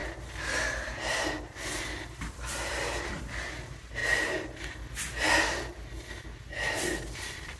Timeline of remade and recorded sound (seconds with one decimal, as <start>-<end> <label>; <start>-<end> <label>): 0.0-1.8 recorded; 1.8-4.0 remade; 4.0-6.8 recorded; 6.8-7.6 remade